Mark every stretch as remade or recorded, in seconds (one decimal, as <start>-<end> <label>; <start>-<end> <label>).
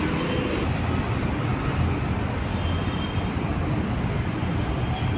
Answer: 0.0-1.5 recorded; 1.5-4.6 remade; 4.6-5.2 recorded